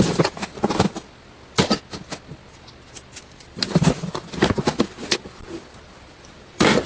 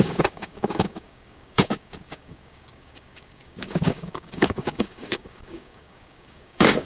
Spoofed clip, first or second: second